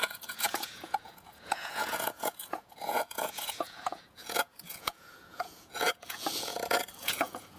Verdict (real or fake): fake